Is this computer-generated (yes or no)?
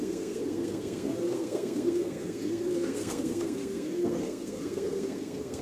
yes